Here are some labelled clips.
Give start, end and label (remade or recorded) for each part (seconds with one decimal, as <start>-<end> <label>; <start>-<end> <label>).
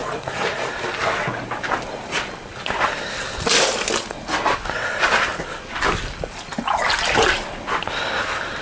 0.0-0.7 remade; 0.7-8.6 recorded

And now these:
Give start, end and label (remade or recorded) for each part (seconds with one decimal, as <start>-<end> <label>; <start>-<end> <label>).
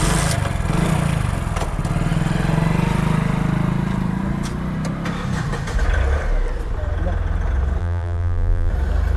0.0-7.8 recorded; 7.8-8.7 remade; 8.7-9.2 recorded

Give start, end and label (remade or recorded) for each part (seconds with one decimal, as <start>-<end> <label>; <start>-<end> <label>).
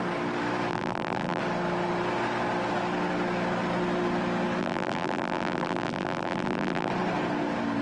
0.0-0.7 recorded; 0.7-1.4 remade; 1.4-4.6 recorded; 4.6-6.9 remade; 6.9-7.8 recorded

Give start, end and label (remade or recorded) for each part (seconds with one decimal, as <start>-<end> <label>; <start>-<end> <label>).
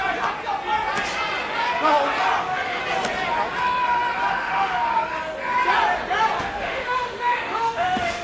0.0-2.4 recorded; 2.4-2.8 remade; 2.8-4.3 recorded; 4.3-4.9 remade; 4.9-6.4 recorded; 6.4-8.2 remade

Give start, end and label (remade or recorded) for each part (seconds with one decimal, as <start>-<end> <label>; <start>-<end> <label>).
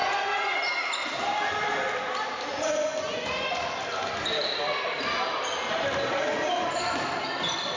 0.0-0.7 remade; 0.7-2.5 recorded; 2.5-3.6 remade; 3.6-7.8 recorded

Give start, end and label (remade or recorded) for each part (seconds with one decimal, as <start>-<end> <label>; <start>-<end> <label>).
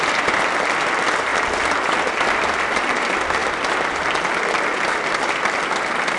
0.0-6.2 recorded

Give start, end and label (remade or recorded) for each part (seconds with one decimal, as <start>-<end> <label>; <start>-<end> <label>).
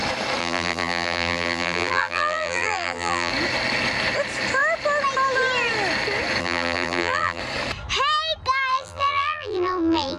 0.0-0.4 recorded; 0.4-3.3 remade; 3.3-6.4 recorded; 6.4-7.4 remade; 7.4-8.7 recorded; 8.7-10.2 remade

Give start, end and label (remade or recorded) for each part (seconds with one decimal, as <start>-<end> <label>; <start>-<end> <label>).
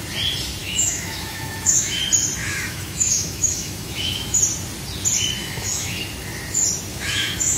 0.0-0.6 recorded; 0.6-2.0 remade; 2.0-2.4 recorded; 2.4-4.4 remade; 4.4-5.4 recorded; 5.4-6.0 remade; 6.0-6.9 recorded; 6.9-7.6 remade